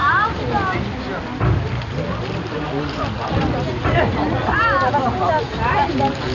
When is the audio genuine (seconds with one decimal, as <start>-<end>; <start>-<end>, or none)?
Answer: 0.0-6.3